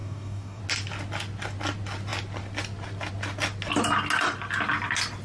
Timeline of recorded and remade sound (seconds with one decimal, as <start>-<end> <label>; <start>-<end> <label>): 0.0-0.6 remade; 0.6-5.2 recorded